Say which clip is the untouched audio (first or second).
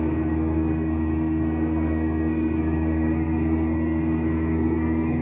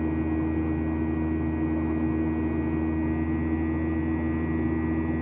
second